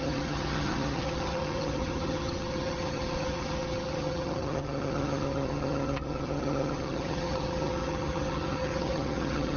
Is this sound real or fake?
fake